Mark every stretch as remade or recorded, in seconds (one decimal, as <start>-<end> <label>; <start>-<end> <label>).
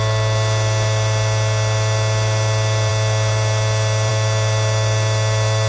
0.0-5.7 recorded